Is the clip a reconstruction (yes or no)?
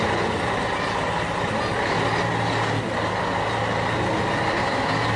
no